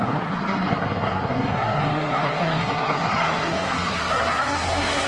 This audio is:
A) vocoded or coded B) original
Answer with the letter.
A